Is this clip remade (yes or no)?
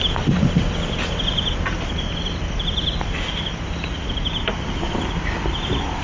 no